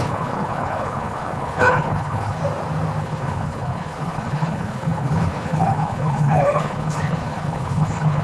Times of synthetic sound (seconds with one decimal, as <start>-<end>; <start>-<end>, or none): 0.0-2.4; 3.0-8.2